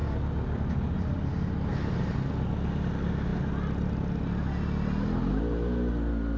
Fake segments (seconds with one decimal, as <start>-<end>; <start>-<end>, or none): none